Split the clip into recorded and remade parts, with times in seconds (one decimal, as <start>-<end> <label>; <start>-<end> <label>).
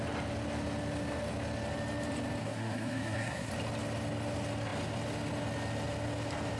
0.0-2.4 recorded; 2.4-3.5 remade; 3.5-6.6 recorded